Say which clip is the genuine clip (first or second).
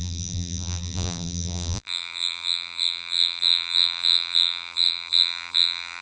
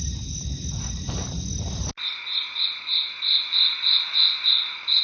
second